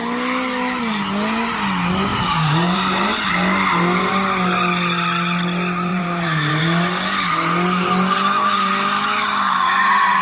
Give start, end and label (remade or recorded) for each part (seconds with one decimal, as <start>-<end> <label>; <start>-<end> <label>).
0.0-2.1 recorded; 2.1-3.3 remade; 3.3-5.9 recorded; 5.9-6.6 remade; 6.6-10.2 recorded

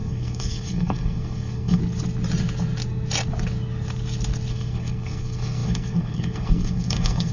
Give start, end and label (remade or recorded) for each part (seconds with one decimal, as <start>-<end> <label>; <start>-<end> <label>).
0.0-1.8 remade; 1.8-4.5 recorded; 4.5-7.3 remade

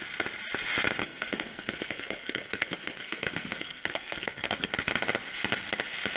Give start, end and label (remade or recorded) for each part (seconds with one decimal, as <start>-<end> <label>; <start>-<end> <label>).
0.0-1.0 recorded; 1.0-4.7 remade; 4.7-6.2 recorded

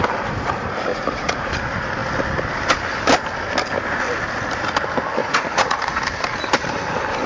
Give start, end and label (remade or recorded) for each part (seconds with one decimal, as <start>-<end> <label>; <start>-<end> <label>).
0.0-0.9 recorded; 0.9-1.5 remade; 1.5-5.2 recorded; 5.2-6.0 remade; 6.0-7.3 recorded

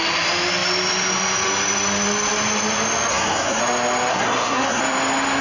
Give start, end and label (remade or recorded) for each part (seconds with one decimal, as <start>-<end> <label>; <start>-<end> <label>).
0.0-3.1 recorded; 3.1-3.6 remade; 3.6-4.1 recorded; 4.1-4.8 remade; 4.8-5.4 recorded

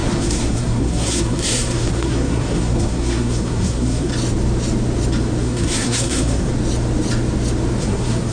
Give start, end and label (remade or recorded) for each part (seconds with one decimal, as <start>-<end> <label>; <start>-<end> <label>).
0.0-4.1 remade; 4.1-5.4 recorded; 5.4-6.5 remade; 6.5-7.8 recorded; 7.8-8.3 remade